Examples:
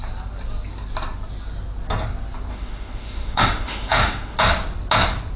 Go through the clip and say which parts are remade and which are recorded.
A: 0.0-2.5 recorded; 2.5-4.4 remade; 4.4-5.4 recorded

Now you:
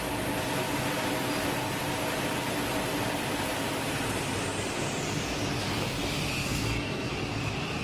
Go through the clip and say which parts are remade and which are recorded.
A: 0.0-6.3 recorded; 6.3-7.1 remade; 7.1-7.8 recorded

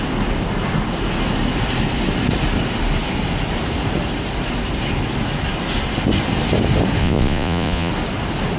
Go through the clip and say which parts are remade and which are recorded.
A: 0.0-7.0 recorded; 7.0-7.9 remade; 7.9-8.6 recorded

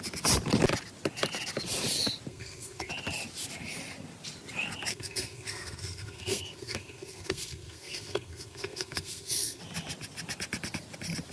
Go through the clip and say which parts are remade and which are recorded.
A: 0.0-2.3 recorded; 2.3-2.9 remade; 2.9-4.9 recorded; 4.9-9.6 remade; 9.6-11.3 recorded

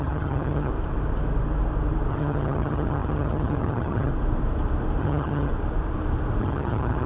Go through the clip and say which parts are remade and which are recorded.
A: 0.0-0.7 remade; 0.7-2.1 recorded; 2.1-4.1 remade; 4.1-5.0 recorded; 5.0-5.5 remade; 5.5-6.4 recorded; 6.4-7.1 remade

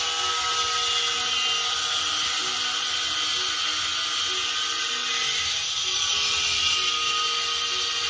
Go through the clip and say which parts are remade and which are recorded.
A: 0.0-8.1 recorded

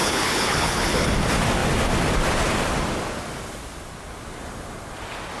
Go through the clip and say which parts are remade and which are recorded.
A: 0.0-1.1 remade; 1.1-5.4 recorded